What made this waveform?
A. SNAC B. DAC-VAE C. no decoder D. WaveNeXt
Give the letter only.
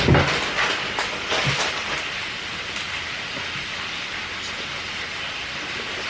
C